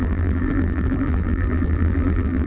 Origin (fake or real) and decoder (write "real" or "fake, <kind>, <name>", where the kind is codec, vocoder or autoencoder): fake, vocoder, BigVGAN v2